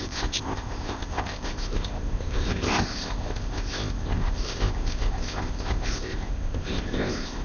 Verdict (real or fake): fake